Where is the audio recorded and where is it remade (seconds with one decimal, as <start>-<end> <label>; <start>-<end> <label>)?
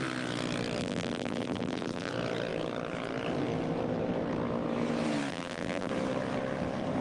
0.0-0.8 recorded; 0.8-2.1 remade; 2.1-5.3 recorded; 5.3-5.9 remade; 5.9-7.0 recorded